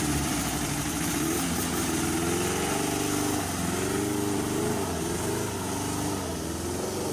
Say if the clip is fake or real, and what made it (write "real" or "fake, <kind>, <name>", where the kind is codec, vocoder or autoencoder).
real